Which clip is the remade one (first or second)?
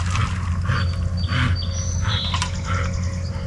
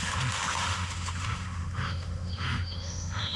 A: second